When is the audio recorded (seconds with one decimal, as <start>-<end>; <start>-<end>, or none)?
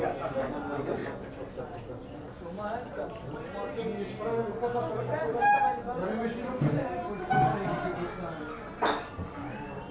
0.0-9.9